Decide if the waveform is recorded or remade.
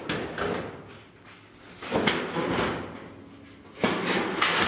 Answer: recorded